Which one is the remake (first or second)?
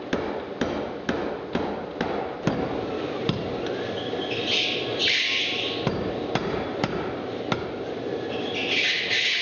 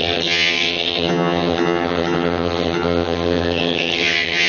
second